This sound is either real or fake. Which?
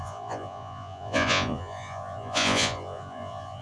fake